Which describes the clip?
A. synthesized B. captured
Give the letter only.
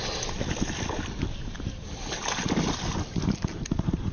B